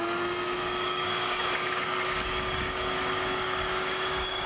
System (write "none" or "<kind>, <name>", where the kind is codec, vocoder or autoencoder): codec, DAC